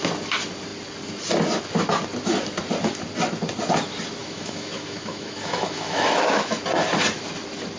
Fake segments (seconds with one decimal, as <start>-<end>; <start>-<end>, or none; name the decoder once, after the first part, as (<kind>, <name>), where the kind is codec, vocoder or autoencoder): 4.2-6.6 (autoencoder, DAC-VAE)